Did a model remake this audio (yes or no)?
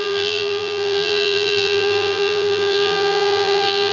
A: yes